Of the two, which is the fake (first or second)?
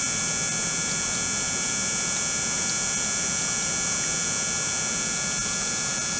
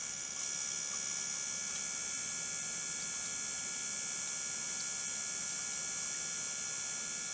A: first